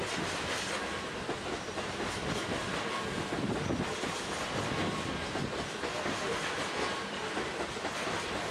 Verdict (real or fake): real